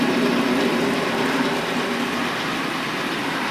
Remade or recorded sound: remade